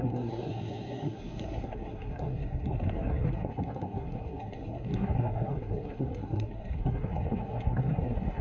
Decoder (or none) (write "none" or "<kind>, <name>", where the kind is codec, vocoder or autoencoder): codec, SNAC